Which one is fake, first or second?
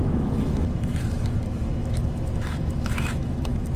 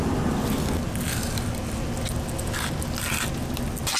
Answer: first